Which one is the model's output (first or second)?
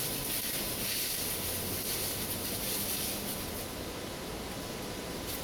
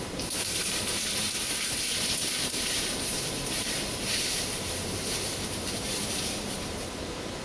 second